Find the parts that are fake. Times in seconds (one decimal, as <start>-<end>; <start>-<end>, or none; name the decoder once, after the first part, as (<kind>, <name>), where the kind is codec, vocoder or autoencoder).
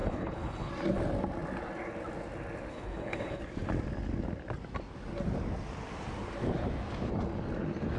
0.0-0.7 (codec, HILCodec); 2.7-3.4